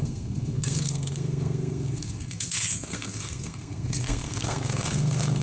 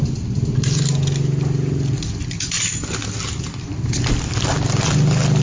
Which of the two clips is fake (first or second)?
first